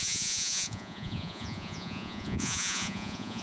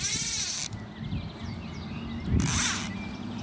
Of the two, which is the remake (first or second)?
first